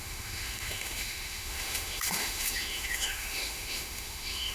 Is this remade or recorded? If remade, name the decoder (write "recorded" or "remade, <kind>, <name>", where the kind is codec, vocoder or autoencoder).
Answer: remade, autoencoder, DAC-VAE